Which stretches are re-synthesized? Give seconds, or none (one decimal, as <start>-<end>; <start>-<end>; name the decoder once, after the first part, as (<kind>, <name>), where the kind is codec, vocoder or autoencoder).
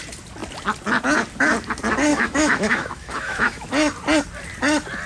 2.1-3.7 (autoencoder, DAC-VAE)